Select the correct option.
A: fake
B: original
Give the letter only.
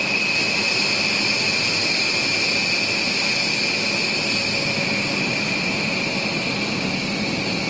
B